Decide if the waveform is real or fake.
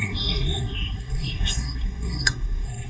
fake